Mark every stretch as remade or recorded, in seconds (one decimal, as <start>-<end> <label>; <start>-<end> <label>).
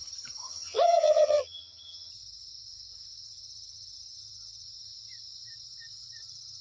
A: 0.0-0.4 recorded; 0.4-2.1 remade; 2.1-6.6 recorded